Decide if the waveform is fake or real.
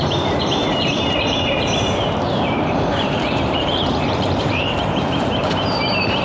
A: fake